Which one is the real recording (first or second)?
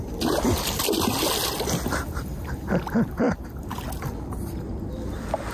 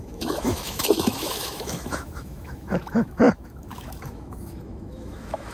first